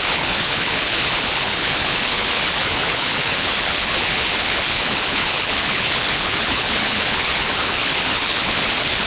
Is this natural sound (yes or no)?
no